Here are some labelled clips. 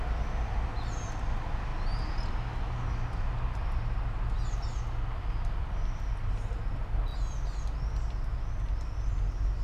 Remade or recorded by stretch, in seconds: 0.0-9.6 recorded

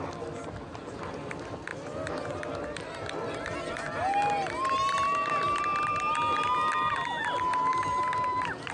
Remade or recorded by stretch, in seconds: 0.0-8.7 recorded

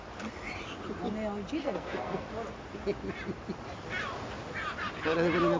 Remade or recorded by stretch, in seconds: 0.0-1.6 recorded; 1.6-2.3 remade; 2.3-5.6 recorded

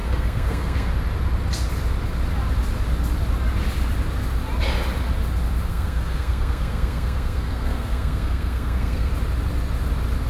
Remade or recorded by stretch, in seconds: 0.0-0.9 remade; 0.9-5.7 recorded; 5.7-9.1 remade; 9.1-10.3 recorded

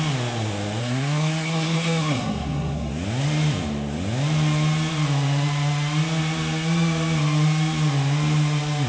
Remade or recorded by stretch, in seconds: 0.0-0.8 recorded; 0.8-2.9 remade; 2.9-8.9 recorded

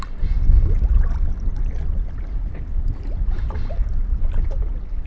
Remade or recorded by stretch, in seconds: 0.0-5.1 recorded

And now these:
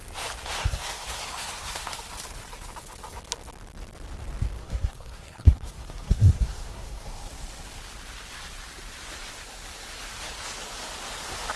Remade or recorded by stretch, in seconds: 0.0-0.6 recorded; 0.6-1.9 remade; 1.9-4.6 recorded; 4.6-7.2 remade; 7.2-11.6 recorded

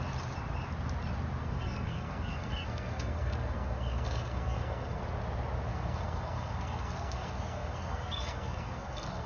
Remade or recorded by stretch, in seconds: 0.0-1.4 recorded; 1.4-5.0 remade; 5.0-5.7 recorded; 5.7-9.3 remade